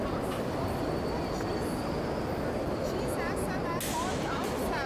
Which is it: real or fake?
real